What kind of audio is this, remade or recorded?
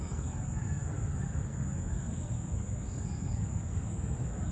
remade